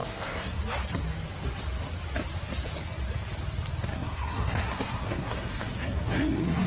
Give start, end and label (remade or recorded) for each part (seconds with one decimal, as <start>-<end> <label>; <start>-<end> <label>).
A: 0.0-0.6 remade; 0.6-3.9 recorded; 3.9-6.7 remade